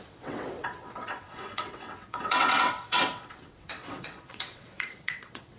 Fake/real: fake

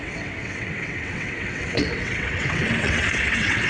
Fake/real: fake